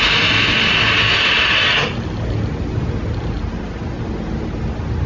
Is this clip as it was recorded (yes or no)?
yes